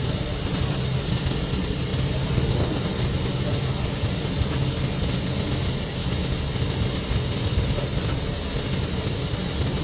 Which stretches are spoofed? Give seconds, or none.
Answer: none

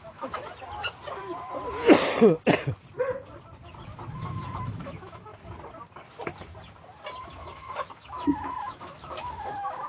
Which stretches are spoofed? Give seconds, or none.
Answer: 0.0-0.4; 4.1-5.3; 7.3-9.9

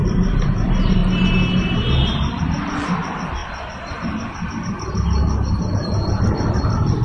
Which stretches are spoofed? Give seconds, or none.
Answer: 0.0-1.0; 2.4-3.4; 6.2-7.0

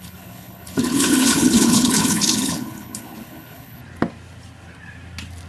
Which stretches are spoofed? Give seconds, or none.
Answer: 0.0-3.8

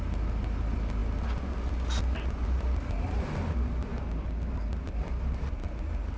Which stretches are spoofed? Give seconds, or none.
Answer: none

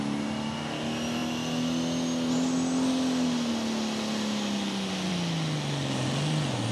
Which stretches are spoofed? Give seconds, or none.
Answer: none

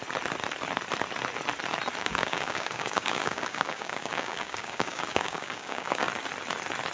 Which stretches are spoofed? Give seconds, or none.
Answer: 2.0-6.1